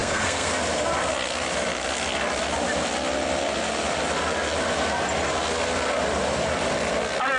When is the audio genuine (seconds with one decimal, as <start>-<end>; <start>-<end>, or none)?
0.5-7.4